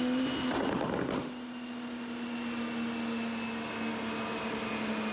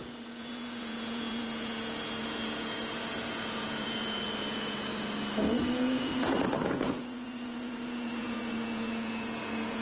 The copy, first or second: second